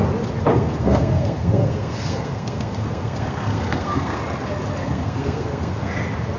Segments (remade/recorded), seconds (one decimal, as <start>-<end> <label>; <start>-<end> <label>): 0.0-0.5 recorded; 0.5-4.2 remade; 4.2-4.8 recorded; 4.8-5.9 remade; 5.9-6.4 recorded